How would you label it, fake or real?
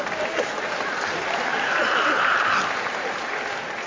real